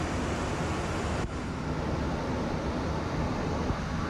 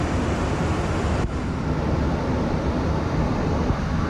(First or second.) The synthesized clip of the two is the second